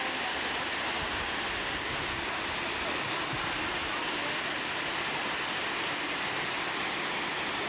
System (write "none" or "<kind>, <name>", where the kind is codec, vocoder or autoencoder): none